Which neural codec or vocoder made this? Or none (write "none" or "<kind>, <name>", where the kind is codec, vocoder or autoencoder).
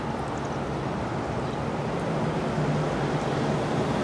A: none